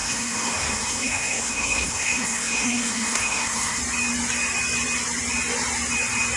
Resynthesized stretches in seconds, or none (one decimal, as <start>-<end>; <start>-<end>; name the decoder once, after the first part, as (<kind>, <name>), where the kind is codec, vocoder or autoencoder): 0.0-3.8 (codec, SNAC)